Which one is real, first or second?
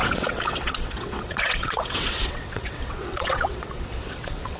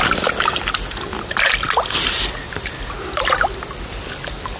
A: second